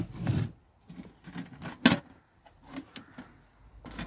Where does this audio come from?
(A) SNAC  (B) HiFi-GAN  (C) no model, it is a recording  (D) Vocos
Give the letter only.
C